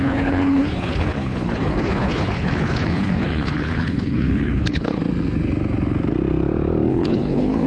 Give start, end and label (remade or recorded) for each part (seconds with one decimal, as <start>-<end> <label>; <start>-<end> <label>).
0.0-5.0 remade; 5.0-6.9 recorded; 6.9-7.7 remade